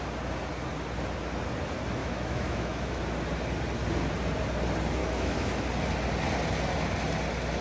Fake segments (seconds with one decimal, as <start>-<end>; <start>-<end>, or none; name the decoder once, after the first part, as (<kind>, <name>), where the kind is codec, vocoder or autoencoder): 2.0-3.0 (autoencoder, DAC-VAE); 5.0-5.5